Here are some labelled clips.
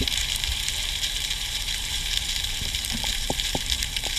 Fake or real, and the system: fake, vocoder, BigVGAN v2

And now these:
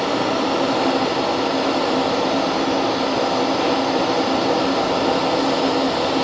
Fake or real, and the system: real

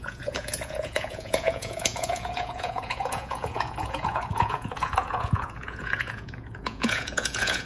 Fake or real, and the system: fake, vocoder, Vocos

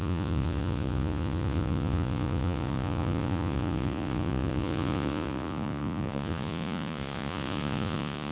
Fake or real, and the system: fake, vocoder, Vocos